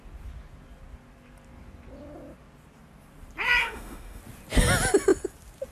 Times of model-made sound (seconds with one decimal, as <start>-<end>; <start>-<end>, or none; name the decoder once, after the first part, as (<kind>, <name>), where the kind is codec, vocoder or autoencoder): 3.6-4.2 (autoencoder, DAC-VAE)